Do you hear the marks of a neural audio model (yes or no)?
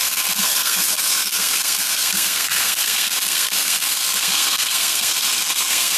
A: yes